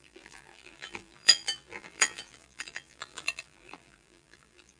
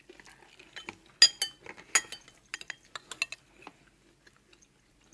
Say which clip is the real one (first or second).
second